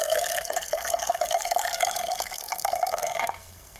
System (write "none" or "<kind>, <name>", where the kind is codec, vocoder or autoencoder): codec, SNAC